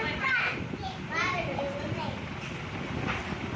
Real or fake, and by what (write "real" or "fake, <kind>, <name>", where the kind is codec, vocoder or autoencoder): real